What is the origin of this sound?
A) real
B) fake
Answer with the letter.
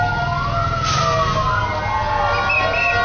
A